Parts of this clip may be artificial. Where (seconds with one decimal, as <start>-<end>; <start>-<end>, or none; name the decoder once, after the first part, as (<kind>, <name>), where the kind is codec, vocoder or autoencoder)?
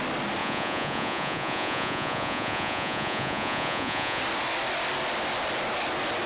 0.4-4.2 (vocoder, Vocos)